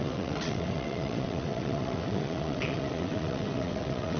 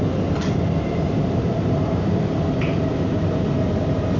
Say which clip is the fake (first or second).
first